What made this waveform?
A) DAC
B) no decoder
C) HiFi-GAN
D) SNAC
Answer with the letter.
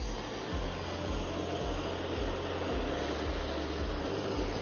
B